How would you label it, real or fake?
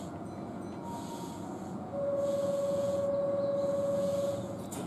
fake